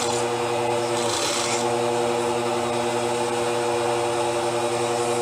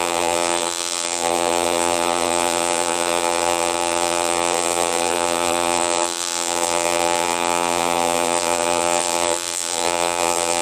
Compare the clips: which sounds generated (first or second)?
second